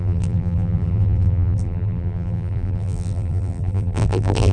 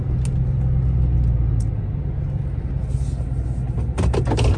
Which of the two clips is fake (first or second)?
first